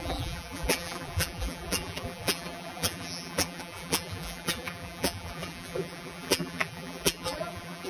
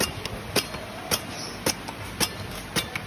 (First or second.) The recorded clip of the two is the second